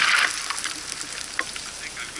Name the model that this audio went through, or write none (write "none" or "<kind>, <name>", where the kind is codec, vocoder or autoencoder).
none